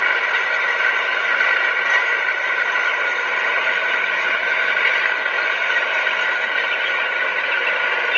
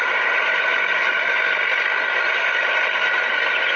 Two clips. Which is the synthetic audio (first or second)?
first